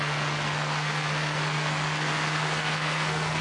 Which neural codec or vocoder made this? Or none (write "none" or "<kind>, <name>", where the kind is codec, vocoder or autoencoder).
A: codec, SNAC